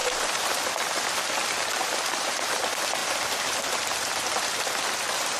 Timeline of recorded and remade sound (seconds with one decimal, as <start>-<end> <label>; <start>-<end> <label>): 0.0-0.7 remade; 0.7-1.8 recorded; 1.8-2.6 remade; 2.6-3.0 recorded; 3.0-3.7 remade; 3.7-5.4 recorded